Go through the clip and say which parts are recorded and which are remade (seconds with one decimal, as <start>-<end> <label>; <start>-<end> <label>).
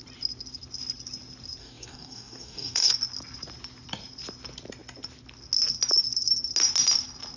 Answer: 0.0-1.6 recorded; 1.6-2.9 remade; 2.9-7.4 recorded